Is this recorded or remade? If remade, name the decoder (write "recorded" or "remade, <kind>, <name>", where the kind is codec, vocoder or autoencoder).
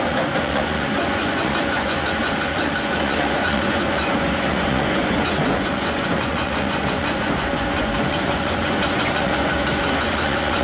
remade, vocoder, Vocos